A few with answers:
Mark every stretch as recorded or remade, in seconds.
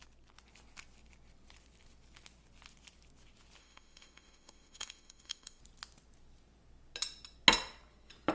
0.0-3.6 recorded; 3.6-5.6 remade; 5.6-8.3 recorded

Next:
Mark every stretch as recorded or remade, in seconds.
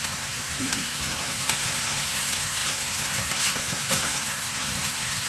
0.0-5.3 remade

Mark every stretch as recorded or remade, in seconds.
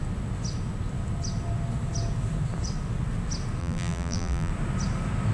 0.0-3.6 recorded; 3.6-4.5 remade; 4.5-5.3 recorded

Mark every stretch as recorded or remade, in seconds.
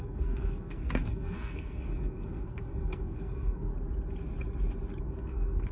0.0-3.7 remade; 3.7-5.0 recorded; 5.0-5.7 remade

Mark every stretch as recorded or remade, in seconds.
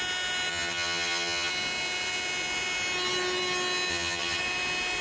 0.0-0.5 recorded; 0.5-1.5 remade; 1.5-3.9 recorded; 3.9-4.4 remade; 4.4-5.0 recorded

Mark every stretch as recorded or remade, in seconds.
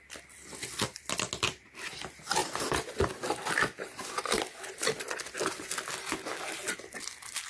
0.0-7.5 recorded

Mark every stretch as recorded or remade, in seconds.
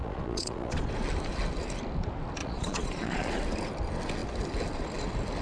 0.0-0.9 remade; 0.9-2.4 recorded; 2.4-3.4 remade; 3.4-5.4 recorded